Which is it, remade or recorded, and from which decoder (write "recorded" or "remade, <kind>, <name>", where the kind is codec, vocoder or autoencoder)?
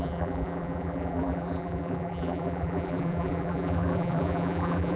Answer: remade, vocoder, BigVGAN v2